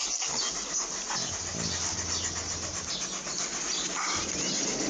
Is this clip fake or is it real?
real